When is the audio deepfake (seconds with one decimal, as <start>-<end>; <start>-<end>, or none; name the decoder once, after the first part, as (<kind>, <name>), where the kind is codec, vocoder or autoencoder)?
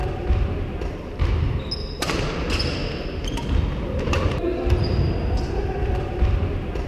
none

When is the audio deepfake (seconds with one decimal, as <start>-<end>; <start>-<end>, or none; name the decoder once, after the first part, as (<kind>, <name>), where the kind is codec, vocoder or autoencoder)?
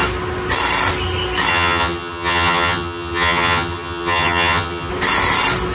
1.5-4.9 (vocoder, HiFi-GAN)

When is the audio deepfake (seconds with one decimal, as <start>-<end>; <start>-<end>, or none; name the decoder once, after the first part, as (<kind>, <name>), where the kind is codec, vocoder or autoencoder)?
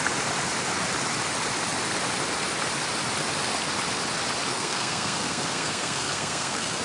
4.5-6.8 (codec, SNAC)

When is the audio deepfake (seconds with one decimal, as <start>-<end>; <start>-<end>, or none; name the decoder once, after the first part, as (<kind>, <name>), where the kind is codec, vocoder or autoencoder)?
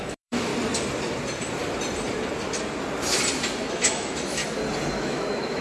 0.0-0.5 (autoencoder, DAC-VAE); 3.7-4.4; 5.0-5.6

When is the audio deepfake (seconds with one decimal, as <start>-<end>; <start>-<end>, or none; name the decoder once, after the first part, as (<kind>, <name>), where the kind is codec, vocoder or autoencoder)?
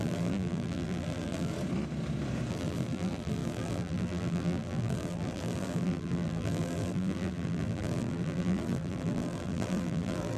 0.0-1.5 (vocoder, BigVGAN v2); 2.5-10.4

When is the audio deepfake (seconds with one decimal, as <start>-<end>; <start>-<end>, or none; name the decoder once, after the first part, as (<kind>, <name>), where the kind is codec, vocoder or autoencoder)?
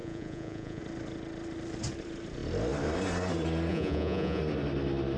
0.0-0.8 (vocoder, Vocos); 3.7-4.4